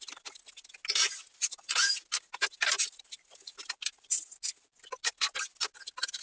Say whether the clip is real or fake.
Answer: real